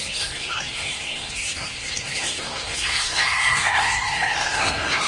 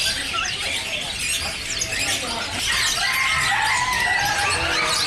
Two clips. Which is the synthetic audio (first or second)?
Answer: first